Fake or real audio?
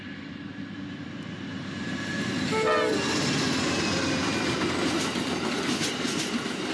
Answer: real